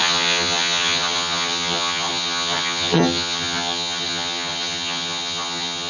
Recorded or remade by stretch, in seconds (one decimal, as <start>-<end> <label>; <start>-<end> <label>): 0.0-5.9 remade

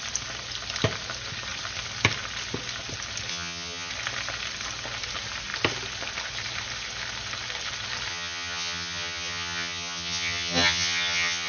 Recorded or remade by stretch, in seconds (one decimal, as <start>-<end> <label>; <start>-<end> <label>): 0.0-3.3 recorded; 3.3-3.9 remade; 3.9-8.1 recorded; 8.1-11.5 remade